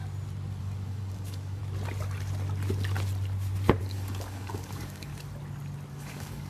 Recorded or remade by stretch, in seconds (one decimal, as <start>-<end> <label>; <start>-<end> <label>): 0.0-0.6 recorded; 0.6-1.6 remade; 1.6-3.8 recorded; 3.8-5.1 remade; 5.1-5.9 recorded; 5.9-6.5 remade

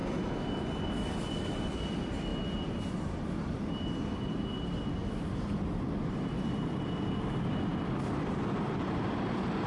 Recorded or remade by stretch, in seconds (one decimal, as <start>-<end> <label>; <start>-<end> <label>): 0.0-1.1 recorded; 1.1-2.3 remade; 2.3-3.2 recorded; 3.2-9.7 remade

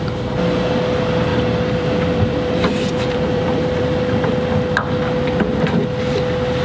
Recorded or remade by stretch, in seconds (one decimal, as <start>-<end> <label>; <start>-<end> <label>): 0.0-1.3 recorded; 1.3-4.3 remade; 4.3-6.6 recorded

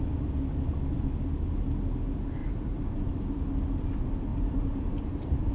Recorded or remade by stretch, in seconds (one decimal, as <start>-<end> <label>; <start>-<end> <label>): 0.0-2.4 recorded; 2.4-3.3 remade; 3.3-4.3 recorded; 4.3-5.5 remade